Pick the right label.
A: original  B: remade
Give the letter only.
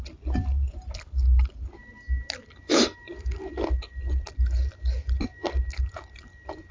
A